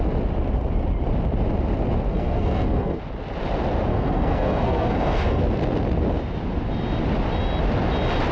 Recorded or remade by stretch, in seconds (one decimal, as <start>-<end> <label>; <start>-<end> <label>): 0.0-2.1 recorded; 2.1-3.0 remade; 3.0-3.9 recorded; 3.9-5.4 remade; 5.4-8.3 recorded